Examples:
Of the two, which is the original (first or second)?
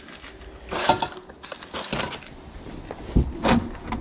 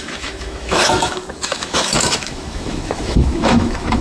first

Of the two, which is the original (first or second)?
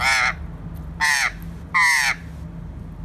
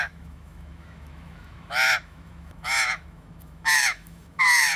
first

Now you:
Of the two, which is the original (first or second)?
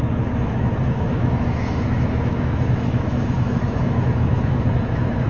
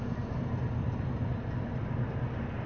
second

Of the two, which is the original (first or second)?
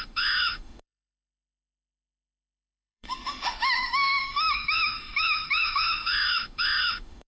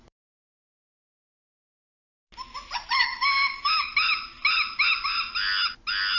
second